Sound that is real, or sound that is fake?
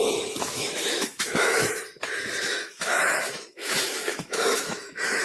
fake